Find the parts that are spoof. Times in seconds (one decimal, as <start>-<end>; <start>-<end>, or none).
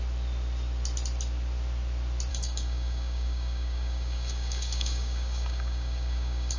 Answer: 2.3-6.6